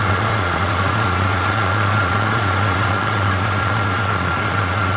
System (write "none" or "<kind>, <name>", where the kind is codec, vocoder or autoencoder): vocoder, Vocos